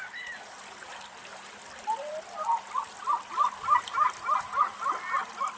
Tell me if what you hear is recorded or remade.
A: recorded